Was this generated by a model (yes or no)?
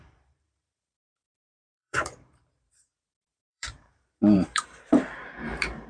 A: yes